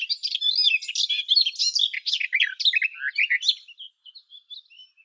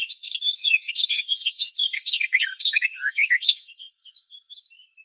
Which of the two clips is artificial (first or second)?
second